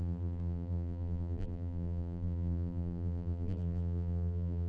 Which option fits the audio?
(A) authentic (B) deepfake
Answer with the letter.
B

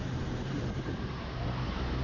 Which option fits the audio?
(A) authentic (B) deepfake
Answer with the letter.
B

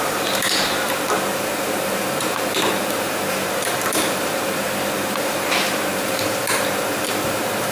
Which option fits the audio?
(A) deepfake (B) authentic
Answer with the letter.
A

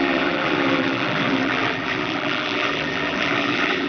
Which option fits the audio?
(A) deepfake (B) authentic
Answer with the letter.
A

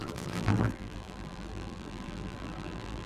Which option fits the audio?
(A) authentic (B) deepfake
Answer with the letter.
B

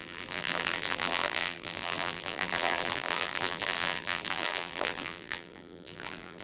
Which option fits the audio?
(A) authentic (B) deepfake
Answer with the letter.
B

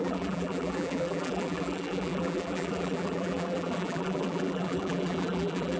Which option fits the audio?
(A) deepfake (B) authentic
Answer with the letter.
A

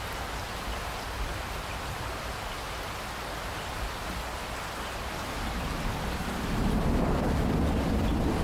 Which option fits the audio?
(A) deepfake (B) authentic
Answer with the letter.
B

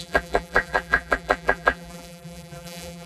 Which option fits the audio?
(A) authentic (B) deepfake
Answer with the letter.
B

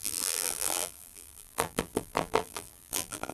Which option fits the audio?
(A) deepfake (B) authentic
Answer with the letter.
A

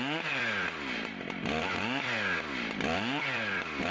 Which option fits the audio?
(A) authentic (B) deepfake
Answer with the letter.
B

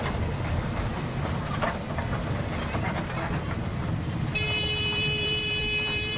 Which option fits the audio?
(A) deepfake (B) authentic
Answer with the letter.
A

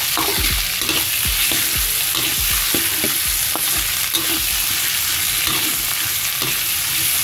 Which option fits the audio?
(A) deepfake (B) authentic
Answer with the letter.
B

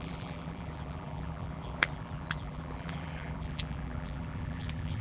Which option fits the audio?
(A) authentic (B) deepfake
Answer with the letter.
B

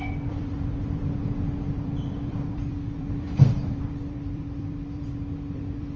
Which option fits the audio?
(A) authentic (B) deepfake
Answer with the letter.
B